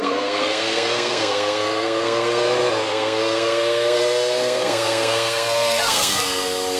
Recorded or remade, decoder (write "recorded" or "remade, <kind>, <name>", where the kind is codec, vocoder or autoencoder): remade, codec, SNAC